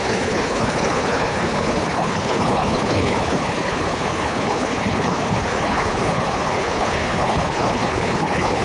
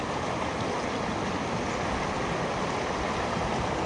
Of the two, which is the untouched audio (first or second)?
second